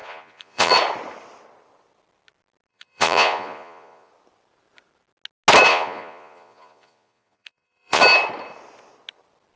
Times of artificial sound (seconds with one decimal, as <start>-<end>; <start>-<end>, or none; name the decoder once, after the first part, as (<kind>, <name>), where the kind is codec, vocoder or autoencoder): 0.0-0.7 (vocoder, Vocos); 2.7-4.1; 5.7-8.0